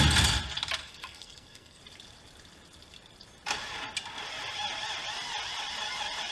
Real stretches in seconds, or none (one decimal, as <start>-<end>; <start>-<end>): 0.0-0.8; 1.8-6.3